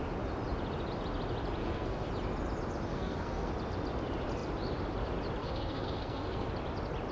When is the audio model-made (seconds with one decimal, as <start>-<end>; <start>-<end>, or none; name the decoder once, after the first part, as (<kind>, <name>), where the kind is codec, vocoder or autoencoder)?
1.6-2.1 (codec, SNAC); 2.9-3.5; 5.4-6.5